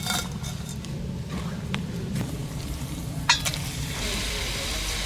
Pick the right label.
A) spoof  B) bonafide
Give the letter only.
A